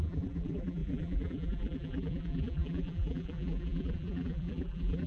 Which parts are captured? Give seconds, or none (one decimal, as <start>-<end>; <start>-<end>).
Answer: none